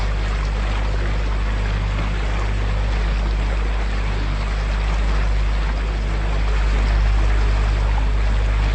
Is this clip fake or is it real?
real